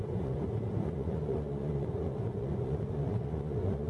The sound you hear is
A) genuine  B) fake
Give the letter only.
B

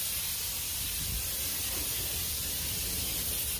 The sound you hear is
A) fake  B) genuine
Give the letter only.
B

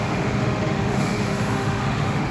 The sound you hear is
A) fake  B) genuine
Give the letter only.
A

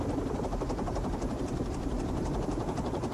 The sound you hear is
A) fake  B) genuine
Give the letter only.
A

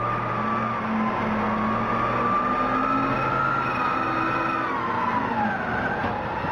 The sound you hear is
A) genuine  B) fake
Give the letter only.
A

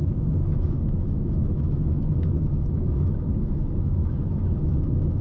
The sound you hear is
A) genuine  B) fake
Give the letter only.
B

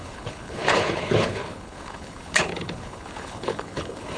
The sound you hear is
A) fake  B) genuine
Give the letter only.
A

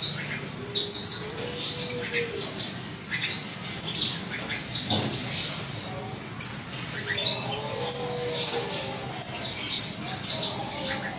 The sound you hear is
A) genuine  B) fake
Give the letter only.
A